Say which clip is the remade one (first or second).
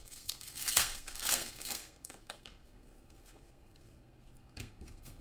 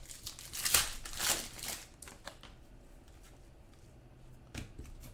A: first